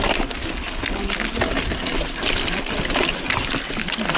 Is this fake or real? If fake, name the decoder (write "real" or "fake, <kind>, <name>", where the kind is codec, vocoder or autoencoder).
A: real